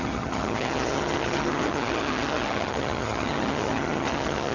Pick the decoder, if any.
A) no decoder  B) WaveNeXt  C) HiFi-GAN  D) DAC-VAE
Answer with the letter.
C